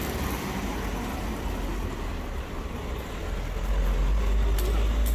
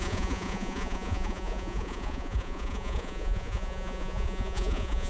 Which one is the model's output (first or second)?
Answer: second